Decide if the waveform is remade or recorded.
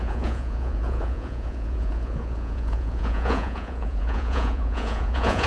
remade